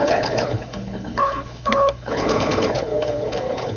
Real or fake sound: fake